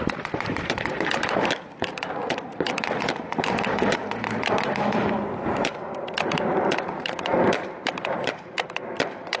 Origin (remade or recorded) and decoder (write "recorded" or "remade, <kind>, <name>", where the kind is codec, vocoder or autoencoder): remade, vocoder, BigVGAN v2